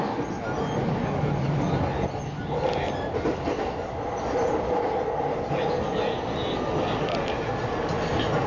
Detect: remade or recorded recorded